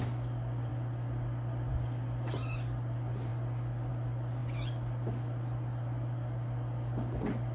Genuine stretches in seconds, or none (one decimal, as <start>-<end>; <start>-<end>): 0.0-7.5